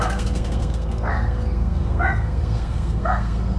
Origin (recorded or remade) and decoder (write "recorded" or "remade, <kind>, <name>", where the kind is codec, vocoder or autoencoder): remade, codec, SNAC